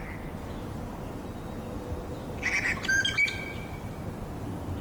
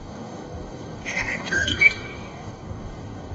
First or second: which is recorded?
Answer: first